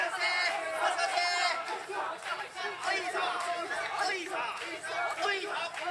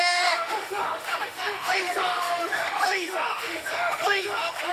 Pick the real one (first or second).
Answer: first